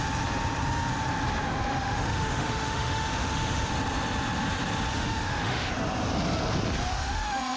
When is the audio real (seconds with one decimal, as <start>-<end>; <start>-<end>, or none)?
0.0-1.7; 3.7-4.9; 5.7-6.9